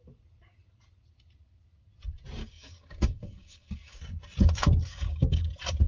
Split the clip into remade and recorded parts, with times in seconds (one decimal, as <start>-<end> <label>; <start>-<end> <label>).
0.0-2.4 recorded; 2.4-4.0 remade; 4.0-4.9 recorded; 4.9-5.5 remade; 5.5-5.9 recorded